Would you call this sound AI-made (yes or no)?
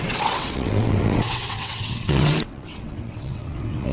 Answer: yes